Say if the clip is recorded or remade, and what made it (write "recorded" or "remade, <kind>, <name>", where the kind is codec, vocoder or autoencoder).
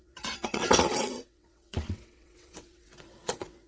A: remade, vocoder, WaveNeXt